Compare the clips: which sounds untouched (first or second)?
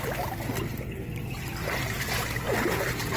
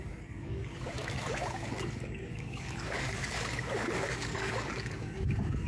first